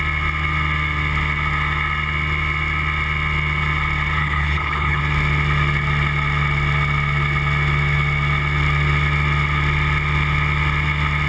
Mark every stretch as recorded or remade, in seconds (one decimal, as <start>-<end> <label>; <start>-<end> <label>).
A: 0.0-4.2 recorded; 4.2-5.0 remade; 5.0-11.3 recorded